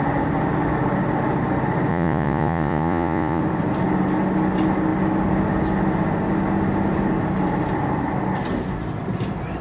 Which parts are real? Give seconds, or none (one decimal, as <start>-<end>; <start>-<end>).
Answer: 0.0-1.9; 3.4-9.6